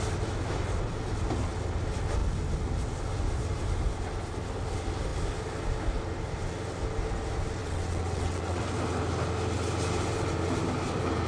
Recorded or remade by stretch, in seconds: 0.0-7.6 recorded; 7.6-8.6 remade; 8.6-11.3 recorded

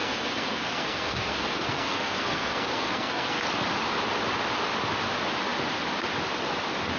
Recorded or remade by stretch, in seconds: 0.0-3.4 remade; 3.4-7.0 recorded

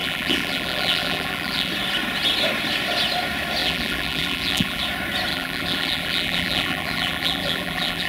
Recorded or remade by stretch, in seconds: 0.0-1.7 remade; 1.7-3.6 recorded; 3.6-4.8 remade; 4.8-5.3 recorded; 5.3-8.1 remade

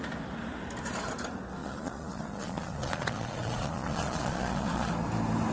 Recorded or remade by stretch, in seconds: 0.0-1.6 recorded; 1.6-4.9 remade; 4.9-5.5 recorded

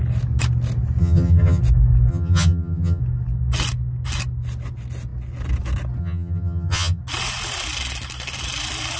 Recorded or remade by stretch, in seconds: 0.0-1.0 recorded; 1.0-1.6 remade; 1.6-2.1 recorded; 2.1-3.0 remade; 3.0-6.0 recorded; 6.0-7.0 remade; 7.0-9.0 recorded

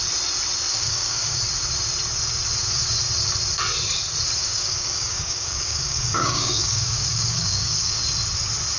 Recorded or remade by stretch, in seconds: 0.0-0.7 recorded; 0.7-1.4 remade; 1.4-4.4 recorded; 4.4-8.0 remade; 8.0-8.8 recorded

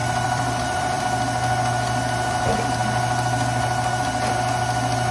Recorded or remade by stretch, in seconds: 0.0-1.0 remade; 1.0-5.1 recorded